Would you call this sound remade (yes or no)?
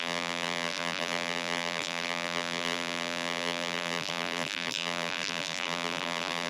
yes